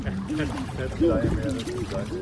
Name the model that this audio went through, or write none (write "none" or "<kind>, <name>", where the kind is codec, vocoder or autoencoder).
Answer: none